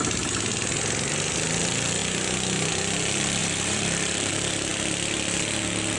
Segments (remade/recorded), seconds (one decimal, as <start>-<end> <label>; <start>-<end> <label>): 0.0-3.4 recorded; 3.4-4.3 remade; 4.3-6.0 recorded